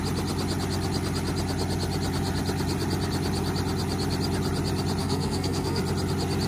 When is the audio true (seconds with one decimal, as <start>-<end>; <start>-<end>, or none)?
0.0-5.0; 5.8-6.5